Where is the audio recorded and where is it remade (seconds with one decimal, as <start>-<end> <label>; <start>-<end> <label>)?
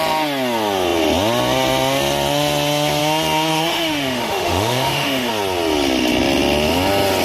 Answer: 0.0-3.5 recorded; 3.5-5.3 remade; 5.3-7.2 recorded